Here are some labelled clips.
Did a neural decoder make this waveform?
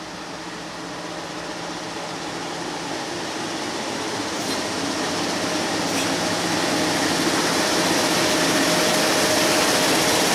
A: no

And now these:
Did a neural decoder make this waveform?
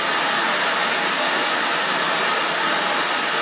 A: no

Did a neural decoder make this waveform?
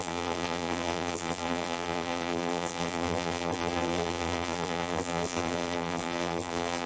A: yes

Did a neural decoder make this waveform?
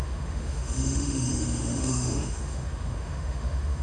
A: yes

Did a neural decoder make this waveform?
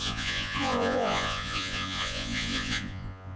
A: yes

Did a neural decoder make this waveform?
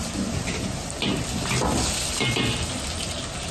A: no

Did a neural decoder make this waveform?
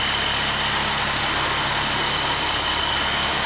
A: no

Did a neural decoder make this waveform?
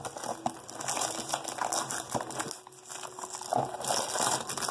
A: no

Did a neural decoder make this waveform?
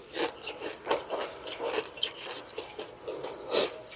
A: yes